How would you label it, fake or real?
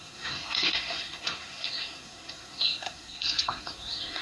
fake